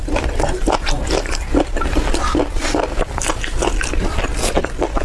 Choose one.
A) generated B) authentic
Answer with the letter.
B